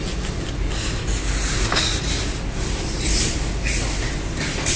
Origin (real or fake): real